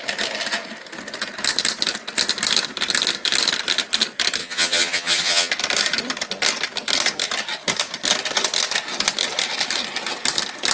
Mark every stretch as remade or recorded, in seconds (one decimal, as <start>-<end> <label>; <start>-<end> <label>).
0.0-4.4 recorded; 4.4-5.5 remade; 5.5-10.7 recorded